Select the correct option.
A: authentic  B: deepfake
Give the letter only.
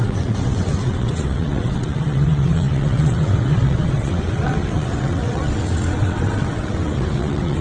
B